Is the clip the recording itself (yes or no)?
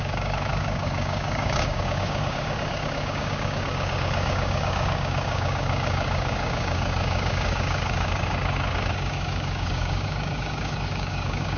no